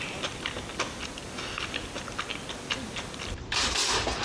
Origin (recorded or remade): recorded